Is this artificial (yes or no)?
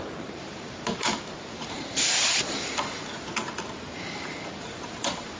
yes